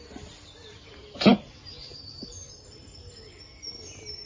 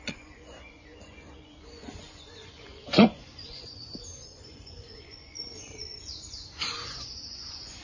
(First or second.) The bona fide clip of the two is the first